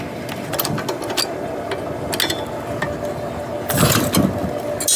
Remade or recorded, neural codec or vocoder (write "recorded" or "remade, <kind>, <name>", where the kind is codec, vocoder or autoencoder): recorded